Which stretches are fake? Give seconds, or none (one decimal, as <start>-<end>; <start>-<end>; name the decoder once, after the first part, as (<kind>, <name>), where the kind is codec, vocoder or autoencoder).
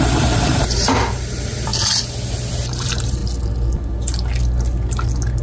0.0-1.7 (vocoder, BigVGAN v2); 2.5-3.2